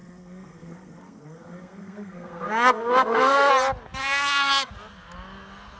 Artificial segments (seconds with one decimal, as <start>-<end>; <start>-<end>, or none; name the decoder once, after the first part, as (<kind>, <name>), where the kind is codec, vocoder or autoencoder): 0.0-3.5 (codec, SNAC); 4.0-4.7